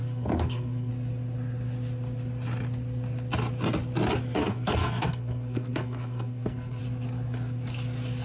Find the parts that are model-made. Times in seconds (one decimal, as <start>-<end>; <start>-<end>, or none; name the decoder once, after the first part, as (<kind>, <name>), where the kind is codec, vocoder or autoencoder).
0.0-0.9 (codec, SNAC); 4.4-6.8